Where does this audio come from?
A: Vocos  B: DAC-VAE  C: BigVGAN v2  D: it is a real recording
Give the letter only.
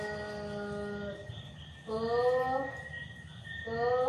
D